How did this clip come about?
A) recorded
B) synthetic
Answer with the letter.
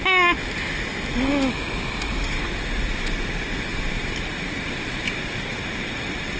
A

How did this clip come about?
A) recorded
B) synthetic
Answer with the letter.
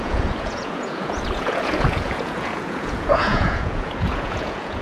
B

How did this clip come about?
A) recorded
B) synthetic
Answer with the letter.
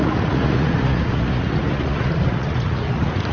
B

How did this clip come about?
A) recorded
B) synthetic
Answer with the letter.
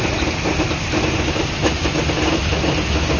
A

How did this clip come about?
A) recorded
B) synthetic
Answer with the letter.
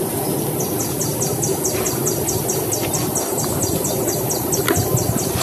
A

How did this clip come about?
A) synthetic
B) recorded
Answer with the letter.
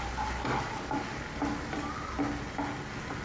B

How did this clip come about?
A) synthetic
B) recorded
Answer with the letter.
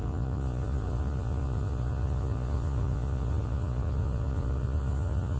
A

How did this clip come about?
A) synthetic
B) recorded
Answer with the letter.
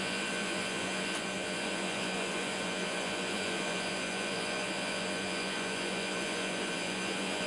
A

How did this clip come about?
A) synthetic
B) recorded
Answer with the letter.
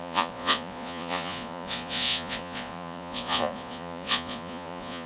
A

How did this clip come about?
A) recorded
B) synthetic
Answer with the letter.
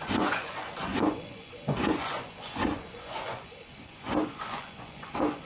B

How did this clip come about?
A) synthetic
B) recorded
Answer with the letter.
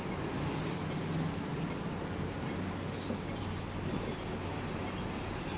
B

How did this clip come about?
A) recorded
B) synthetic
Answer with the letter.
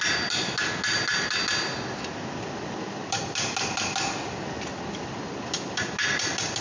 A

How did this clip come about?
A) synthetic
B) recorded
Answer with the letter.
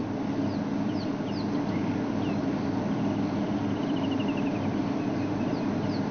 B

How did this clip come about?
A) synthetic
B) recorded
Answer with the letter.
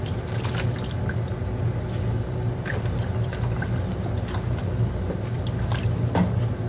B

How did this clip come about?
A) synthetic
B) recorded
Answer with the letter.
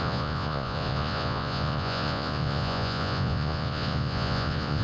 A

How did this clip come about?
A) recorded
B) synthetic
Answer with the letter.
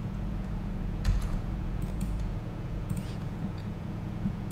B